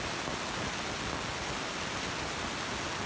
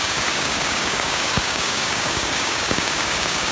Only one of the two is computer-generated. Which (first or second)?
second